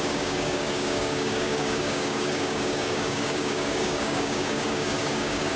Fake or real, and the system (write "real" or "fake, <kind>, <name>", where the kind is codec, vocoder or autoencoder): fake, codec, DAC